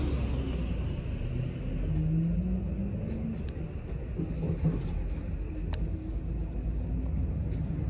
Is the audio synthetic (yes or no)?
no